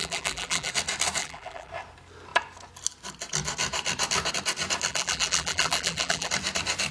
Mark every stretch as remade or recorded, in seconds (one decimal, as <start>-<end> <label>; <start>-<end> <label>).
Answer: 0.0-0.7 remade; 0.7-1.2 recorded; 1.2-1.7 remade; 1.7-4.9 recorded; 4.9-6.3 remade; 6.3-6.9 recorded